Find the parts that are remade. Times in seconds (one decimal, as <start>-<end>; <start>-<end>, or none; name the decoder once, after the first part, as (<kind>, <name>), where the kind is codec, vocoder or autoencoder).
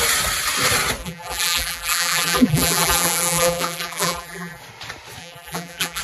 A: 1.0-4.6 (vocoder, BigVGAN v2); 5.2-6.0